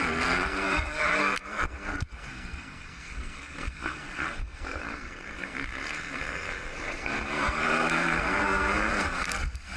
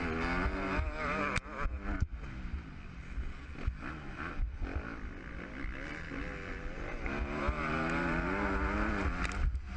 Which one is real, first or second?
second